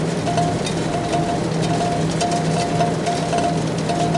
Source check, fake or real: real